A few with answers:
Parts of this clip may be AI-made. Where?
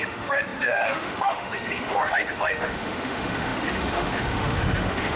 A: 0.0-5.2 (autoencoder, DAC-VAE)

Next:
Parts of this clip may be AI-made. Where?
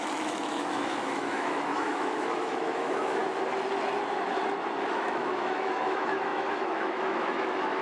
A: 0.0-3.2 (autoencoder, DAC-VAE); 4.9-7.8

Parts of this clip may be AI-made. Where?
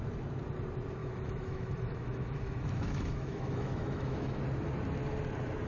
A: 1.0-4.4 (autoencoder, DAC-VAE)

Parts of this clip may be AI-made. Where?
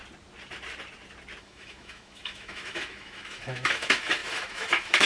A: 1.4-5.1 (autoencoder, DAC-VAE)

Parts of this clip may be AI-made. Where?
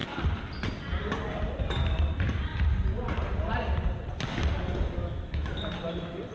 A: 5.0-5.5 (autoencoder, DAC-VAE)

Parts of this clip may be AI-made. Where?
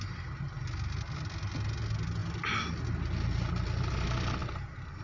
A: none